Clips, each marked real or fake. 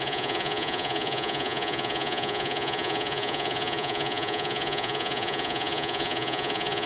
fake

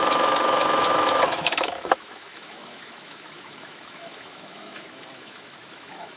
fake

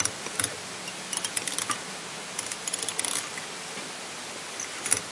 real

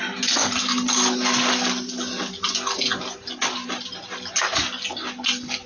real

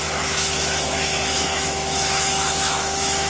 fake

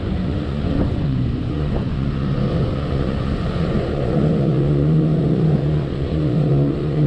fake